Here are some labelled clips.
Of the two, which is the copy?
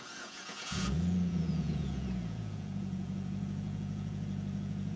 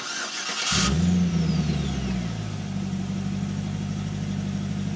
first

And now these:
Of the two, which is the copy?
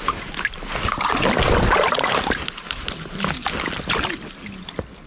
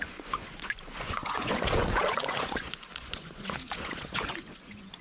second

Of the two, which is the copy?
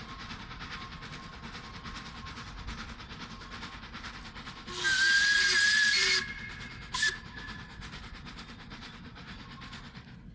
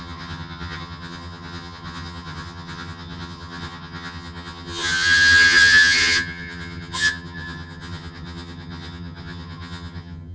second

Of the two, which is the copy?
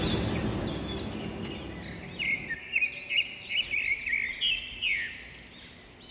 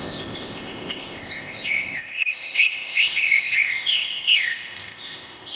second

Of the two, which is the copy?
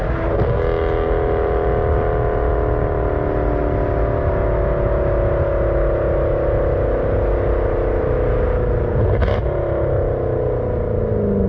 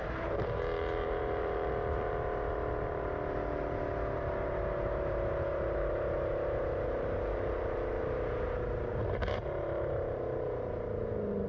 second